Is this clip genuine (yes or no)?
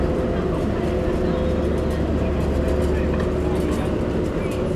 yes